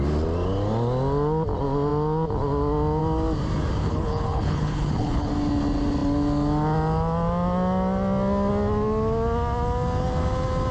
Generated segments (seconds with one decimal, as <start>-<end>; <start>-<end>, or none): 3.8-5.3